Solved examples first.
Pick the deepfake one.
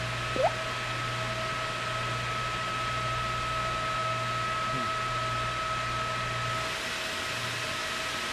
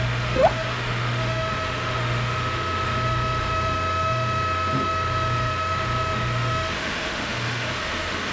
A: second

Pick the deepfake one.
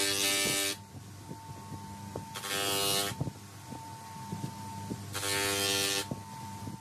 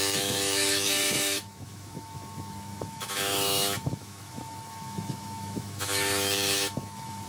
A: second